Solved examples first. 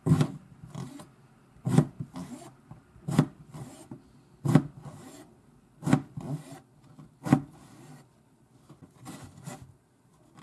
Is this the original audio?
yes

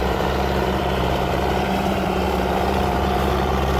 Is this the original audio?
no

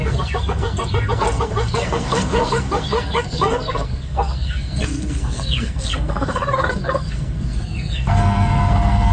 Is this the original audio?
no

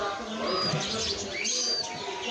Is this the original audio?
yes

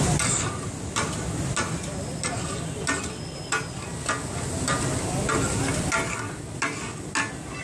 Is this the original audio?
yes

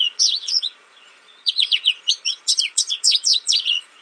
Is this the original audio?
no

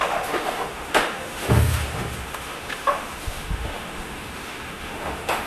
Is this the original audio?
no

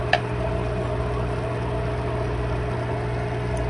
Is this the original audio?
yes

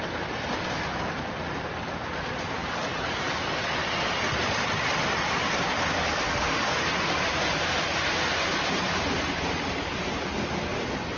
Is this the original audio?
yes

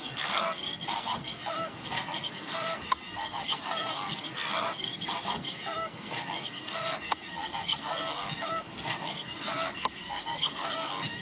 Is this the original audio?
no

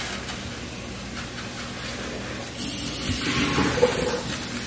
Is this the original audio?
yes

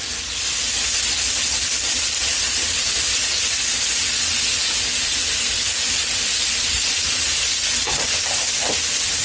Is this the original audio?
yes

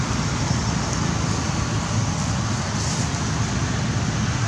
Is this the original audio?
yes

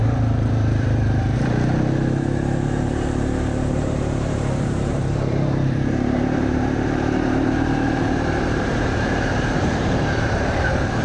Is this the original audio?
no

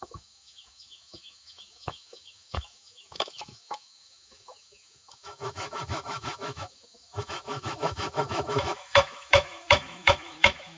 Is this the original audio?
no